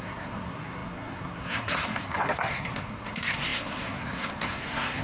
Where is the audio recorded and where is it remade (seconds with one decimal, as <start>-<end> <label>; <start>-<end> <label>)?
0.0-5.0 remade